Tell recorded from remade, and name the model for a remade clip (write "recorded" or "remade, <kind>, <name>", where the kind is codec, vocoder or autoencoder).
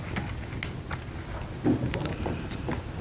recorded